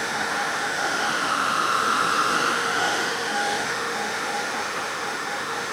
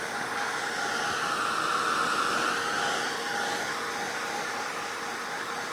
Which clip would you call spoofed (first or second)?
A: first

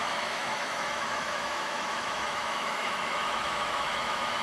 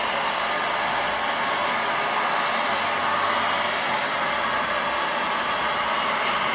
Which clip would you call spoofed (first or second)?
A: first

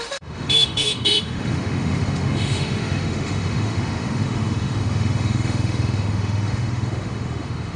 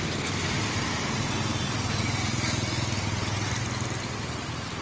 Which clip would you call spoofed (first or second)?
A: first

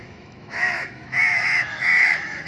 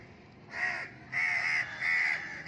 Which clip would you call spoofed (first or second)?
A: first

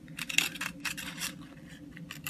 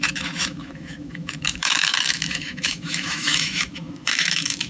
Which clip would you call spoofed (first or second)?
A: second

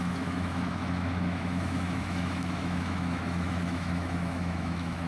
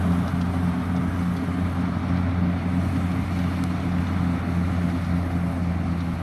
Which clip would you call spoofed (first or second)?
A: first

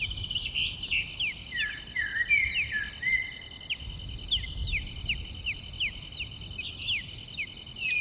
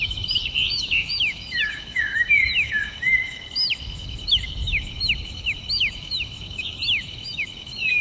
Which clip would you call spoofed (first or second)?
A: second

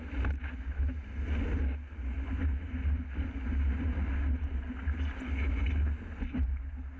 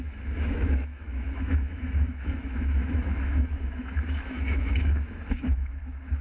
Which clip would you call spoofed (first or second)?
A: second